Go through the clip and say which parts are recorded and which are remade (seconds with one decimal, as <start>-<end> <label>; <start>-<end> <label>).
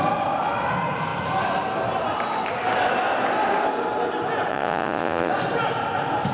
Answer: 0.0-4.5 recorded; 4.5-5.3 remade; 5.3-6.3 recorded